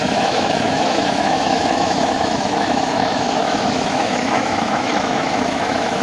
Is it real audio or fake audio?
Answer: fake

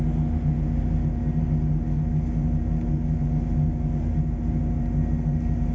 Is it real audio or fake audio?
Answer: real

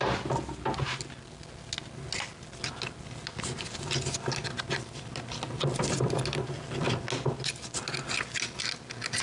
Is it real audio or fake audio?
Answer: real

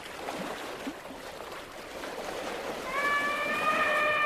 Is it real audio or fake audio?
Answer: real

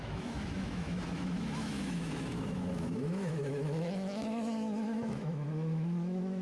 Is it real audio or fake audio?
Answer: fake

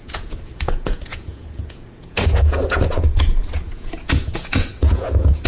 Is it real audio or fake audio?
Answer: fake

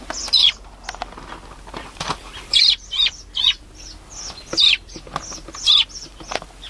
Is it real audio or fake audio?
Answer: real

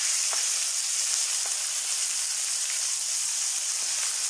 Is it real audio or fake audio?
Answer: real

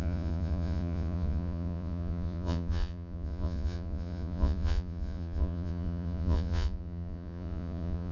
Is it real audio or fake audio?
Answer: fake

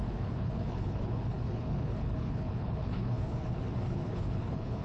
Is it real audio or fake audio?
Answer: fake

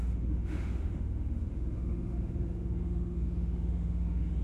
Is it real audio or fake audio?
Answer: fake